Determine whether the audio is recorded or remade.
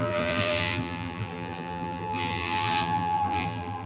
remade